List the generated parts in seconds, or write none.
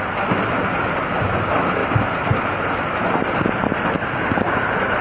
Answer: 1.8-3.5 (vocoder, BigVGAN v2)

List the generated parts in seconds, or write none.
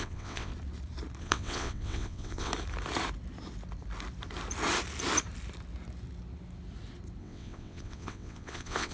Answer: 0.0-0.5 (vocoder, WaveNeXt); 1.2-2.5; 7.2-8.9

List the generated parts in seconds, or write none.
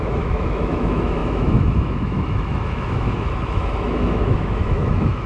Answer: 0.0-5.3 (autoencoder, DAC-VAE)